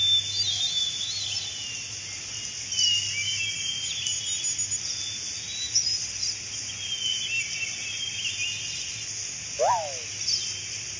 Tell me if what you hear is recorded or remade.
recorded